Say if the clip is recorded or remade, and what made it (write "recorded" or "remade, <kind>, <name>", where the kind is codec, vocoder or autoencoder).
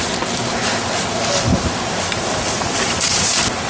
recorded